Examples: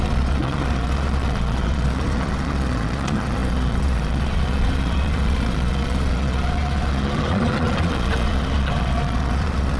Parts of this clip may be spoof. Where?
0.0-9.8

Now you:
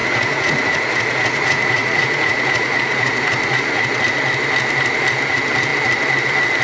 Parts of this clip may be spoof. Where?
0.0-4.0

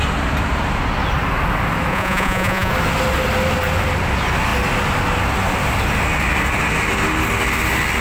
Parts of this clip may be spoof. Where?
1.9-2.7

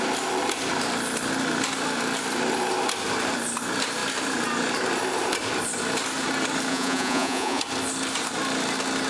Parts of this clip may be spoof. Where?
6.7-7.6

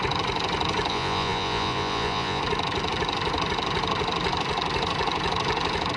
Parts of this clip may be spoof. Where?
0.9-2.4

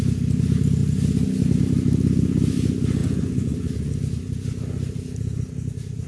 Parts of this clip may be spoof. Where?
3.0-3.9

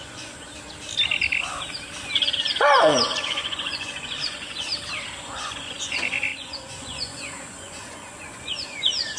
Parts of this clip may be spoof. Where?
0.0-0.5; 2.5-4.7; 5.2-9.2